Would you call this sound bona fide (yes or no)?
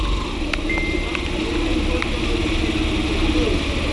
yes